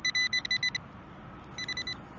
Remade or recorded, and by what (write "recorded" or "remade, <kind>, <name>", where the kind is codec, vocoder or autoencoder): recorded